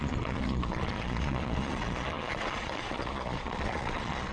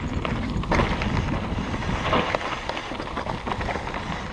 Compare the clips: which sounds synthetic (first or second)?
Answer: first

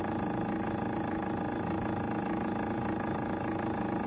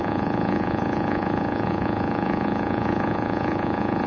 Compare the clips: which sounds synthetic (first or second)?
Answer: second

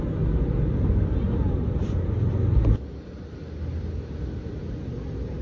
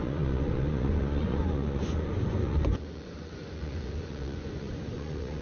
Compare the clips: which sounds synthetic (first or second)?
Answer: second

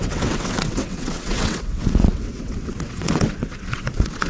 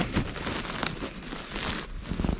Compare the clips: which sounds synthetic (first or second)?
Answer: first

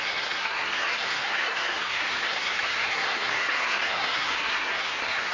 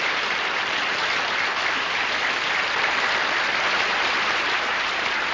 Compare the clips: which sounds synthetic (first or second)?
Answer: first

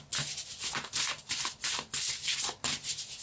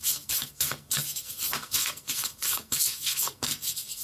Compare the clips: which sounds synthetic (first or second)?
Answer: second